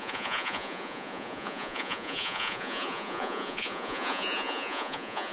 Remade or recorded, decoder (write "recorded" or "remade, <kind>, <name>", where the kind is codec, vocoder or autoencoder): remade, vocoder, Vocos